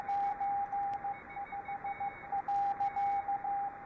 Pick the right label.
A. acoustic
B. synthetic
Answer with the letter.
B